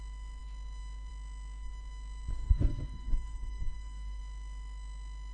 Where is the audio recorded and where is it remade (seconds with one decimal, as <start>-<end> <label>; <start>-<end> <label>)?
0.0-2.3 recorded; 2.3-4.2 remade; 4.2-5.3 recorded